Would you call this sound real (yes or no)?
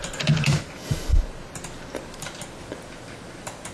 yes